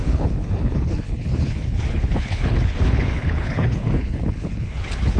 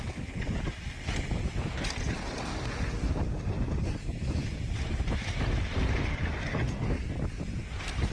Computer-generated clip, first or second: first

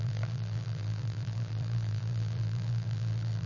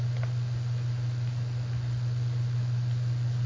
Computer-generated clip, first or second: first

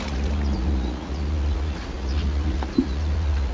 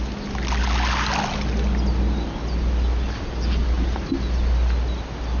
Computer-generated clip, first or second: first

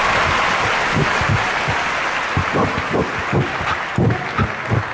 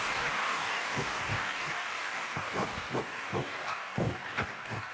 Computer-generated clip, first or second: second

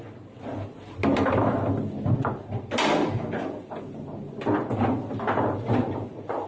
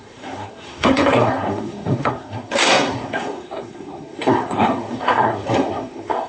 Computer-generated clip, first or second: second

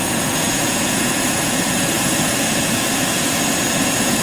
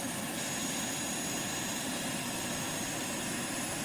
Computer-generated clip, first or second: first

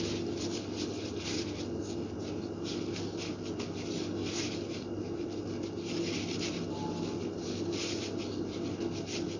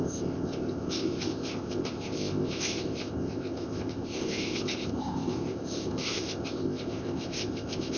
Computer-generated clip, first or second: second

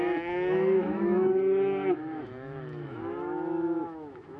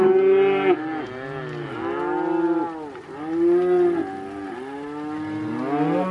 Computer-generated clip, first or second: first